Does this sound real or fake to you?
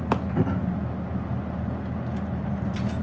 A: real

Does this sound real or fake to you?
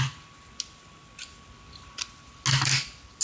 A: real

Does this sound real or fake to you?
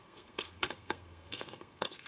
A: fake